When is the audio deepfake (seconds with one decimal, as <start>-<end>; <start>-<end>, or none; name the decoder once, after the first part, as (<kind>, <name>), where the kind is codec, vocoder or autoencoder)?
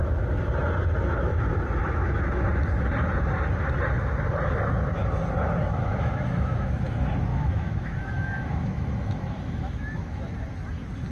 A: 1.8-2.5 (autoencoder, DAC-VAE); 5.7-6.7; 7.3-10.2